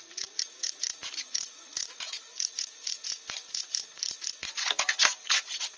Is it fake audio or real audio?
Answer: fake